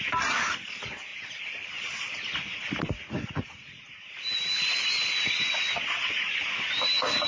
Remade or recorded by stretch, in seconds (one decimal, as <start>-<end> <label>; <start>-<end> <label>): 0.0-7.3 recorded